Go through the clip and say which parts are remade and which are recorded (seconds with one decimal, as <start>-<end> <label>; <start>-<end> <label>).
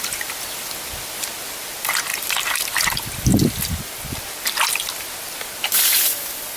0.0-2.1 recorded; 2.1-2.8 remade; 2.8-6.6 recorded